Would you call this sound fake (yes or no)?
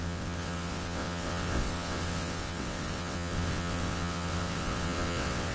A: yes